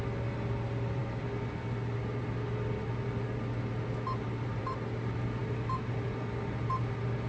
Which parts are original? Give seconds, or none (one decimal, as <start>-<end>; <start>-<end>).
0.0-7.3